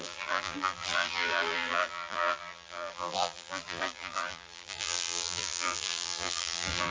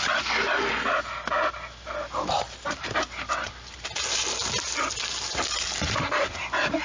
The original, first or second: second